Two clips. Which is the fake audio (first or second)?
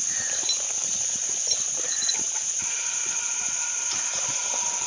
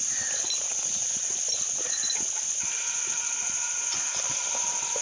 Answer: first